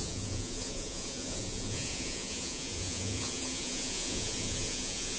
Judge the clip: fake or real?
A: fake